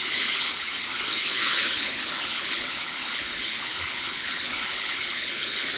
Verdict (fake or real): fake